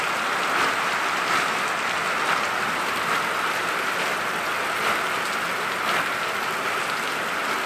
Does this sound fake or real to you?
real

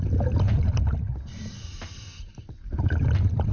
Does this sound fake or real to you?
real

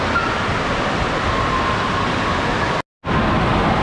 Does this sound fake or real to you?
real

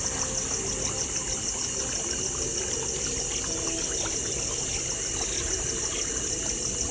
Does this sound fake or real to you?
real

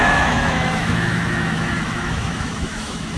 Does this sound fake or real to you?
fake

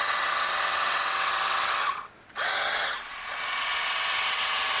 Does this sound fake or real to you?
fake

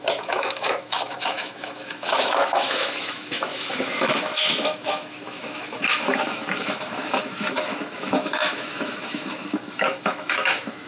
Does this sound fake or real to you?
fake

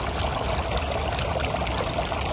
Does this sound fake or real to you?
real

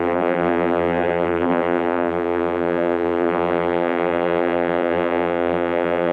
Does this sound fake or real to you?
fake